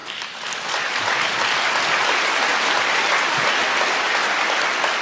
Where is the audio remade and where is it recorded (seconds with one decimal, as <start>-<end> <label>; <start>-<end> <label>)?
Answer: 0.0-0.6 remade; 0.6-2.5 recorded; 2.5-4.1 remade; 4.1-5.0 recorded